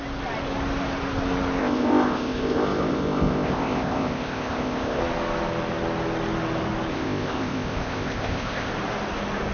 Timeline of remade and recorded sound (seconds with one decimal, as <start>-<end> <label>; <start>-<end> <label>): 0.0-1.6 recorded; 1.6-5.0 remade; 5.0-6.9 recorded; 6.9-8.7 remade; 8.7-9.5 recorded